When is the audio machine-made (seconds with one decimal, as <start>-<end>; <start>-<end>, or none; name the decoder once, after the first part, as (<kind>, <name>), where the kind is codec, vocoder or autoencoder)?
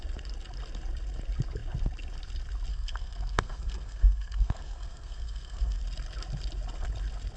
2.7-5.8 (codec, SNAC)